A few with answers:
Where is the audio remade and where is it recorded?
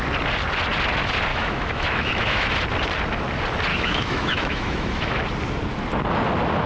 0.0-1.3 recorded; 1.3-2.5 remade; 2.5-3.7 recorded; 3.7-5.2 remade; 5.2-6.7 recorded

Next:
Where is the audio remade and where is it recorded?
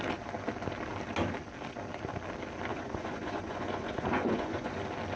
0.0-2.7 recorded; 2.7-4.8 remade; 4.8-5.2 recorded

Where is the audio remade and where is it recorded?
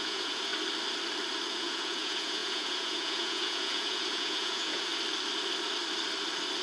0.0-0.5 remade; 0.5-1.5 recorded; 1.5-4.9 remade; 4.9-6.6 recorded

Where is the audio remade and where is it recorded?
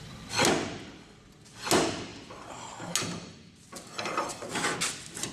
0.0-5.3 recorded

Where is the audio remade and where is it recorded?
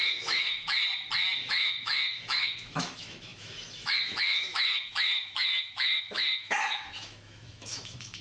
0.0-0.9 remade; 0.9-1.5 recorded; 1.5-8.2 remade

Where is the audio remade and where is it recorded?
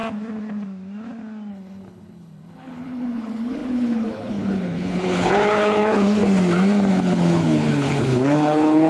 0.0-1.5 recorded; 1.5-6.2 remade; 6.2-6.9 recorded; 6.9-8.9 remade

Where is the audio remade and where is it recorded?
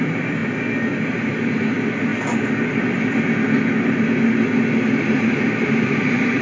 0.0-0.4 remade; 0.4-1.0 recorded; 1.0-2.1 remade; 2.1-4.7 recorded; 4.7-6.4 remade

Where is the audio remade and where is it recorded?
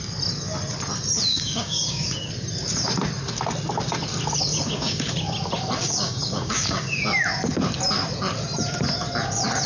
0.0-1.3 recorded; 1.3-2.3 remade; 2.3-4.5 recorded; 4.5-5.1 remade; 5.1-5.8 recorded; 5.8-7.0 remade; 7.0-9.7 recorded